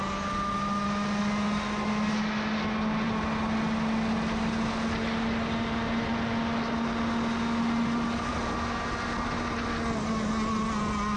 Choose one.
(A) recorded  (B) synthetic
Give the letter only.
A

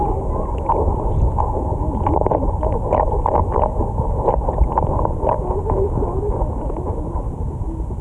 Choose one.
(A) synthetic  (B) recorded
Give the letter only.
B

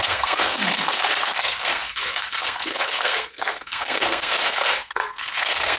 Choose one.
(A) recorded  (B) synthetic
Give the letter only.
B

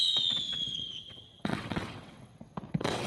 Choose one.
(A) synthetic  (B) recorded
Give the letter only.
A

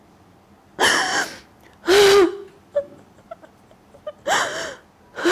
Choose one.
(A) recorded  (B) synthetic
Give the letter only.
A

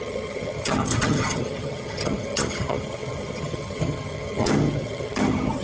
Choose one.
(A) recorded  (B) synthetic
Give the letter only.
B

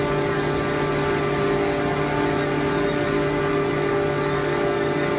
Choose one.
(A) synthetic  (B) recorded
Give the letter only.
B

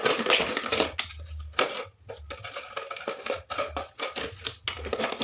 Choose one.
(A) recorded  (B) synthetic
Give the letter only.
A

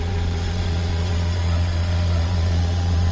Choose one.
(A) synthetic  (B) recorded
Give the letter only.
A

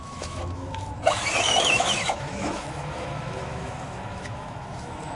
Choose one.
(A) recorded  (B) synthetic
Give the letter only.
B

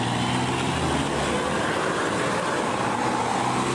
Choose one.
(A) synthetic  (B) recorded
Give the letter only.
B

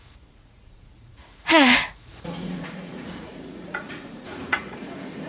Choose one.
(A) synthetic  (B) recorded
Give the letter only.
A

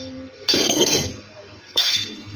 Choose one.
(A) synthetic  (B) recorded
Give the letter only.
A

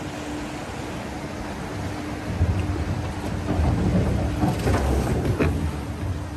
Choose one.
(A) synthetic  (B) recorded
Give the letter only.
B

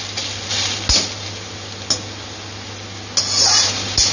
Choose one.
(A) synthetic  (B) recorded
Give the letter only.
B